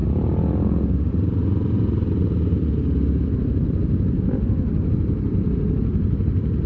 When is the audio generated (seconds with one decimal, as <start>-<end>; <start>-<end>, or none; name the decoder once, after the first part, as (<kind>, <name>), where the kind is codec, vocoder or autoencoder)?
none